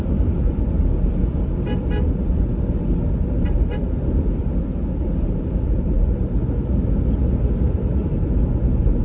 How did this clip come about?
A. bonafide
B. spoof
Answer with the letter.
A